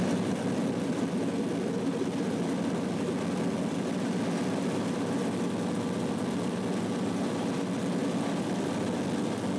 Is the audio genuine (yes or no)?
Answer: yes